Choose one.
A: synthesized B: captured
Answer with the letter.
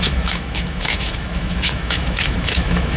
A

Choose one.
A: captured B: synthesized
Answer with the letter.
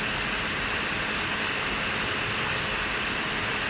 A